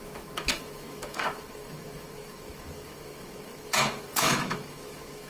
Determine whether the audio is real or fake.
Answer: fake